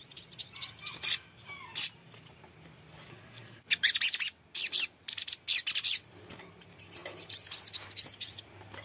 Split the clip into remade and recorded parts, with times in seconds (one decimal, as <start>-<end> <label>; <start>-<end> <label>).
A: 0.0-3.1 recorded; 3.1-3.6 remade; 3.6-8.8 recorded